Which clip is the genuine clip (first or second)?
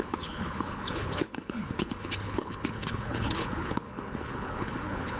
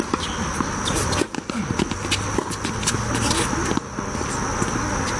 second